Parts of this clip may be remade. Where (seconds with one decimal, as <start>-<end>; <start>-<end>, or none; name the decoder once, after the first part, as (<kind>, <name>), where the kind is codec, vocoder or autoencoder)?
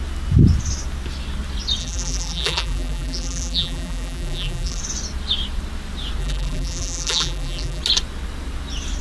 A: 1.8-4.8 (vocoder, BigVGAN v2); 6.2-7.8